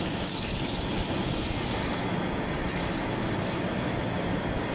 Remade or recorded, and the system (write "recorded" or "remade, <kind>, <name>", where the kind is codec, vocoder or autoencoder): recorded